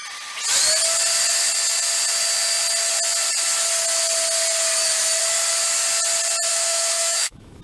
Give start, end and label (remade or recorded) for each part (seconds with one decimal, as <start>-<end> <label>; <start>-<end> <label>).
0.0-6.5 recorded; 6.5-7.6 remade